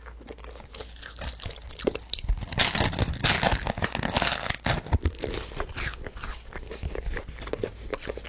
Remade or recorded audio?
recorded